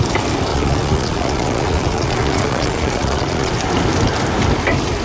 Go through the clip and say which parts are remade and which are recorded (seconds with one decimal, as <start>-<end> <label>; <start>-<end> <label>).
0.0-0.5 recorded; 0.5-3.5 remade; 3.5-5.0 recorded